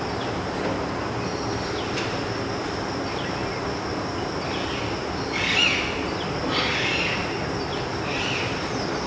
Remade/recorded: recorded